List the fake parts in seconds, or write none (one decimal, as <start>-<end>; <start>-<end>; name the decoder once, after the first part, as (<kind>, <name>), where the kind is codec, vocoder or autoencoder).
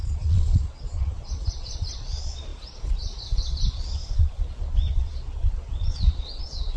0.0-6.8 (vocoder, Vocos)